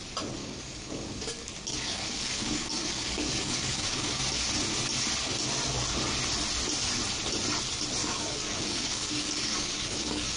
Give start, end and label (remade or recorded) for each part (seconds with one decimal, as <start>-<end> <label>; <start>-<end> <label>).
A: 0.0-0.4 recorded; 0.4-4.2 remade; 4.2-8.0 recorded; 8.0-10.4 remade